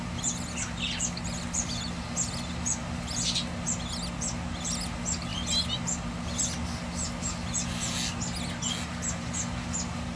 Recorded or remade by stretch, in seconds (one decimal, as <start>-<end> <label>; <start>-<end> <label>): 0.0-10.2 recorded